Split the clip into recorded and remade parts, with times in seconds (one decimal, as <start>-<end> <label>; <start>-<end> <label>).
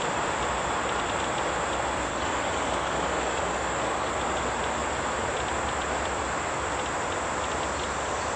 0.0-2.1 recorded; 2.1-4.1 remade; 4.1-8.4 recorded